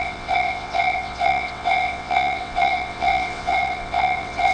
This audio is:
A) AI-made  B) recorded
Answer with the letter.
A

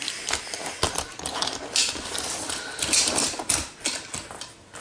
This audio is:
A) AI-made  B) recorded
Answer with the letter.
B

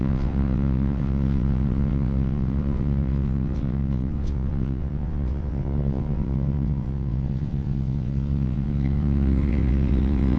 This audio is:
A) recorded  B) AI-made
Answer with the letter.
B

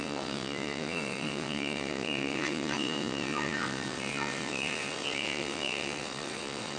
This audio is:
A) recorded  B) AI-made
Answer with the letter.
B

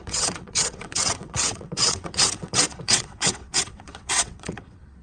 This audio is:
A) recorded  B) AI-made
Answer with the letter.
B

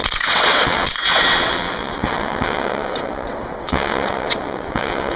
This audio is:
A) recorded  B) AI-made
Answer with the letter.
B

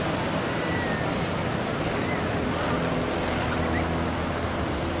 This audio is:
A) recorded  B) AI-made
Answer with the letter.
A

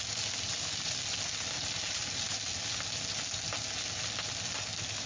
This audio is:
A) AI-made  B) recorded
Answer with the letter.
B